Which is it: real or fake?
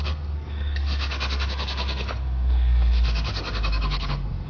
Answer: fake